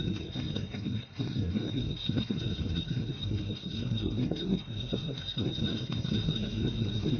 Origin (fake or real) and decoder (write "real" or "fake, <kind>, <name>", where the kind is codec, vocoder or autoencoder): fake, codec, SNAC